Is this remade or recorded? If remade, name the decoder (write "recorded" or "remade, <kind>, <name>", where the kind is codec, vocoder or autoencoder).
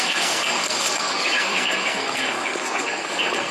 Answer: remade, codec, SNAC